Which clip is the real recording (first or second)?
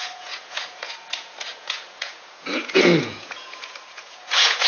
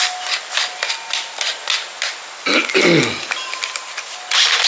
second